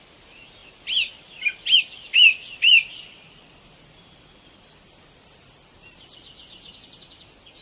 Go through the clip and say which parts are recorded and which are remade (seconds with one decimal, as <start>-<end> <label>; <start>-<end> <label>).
0.0-2.9 recorded; 2.9-6.7 remade; 6.7-7.6 recorded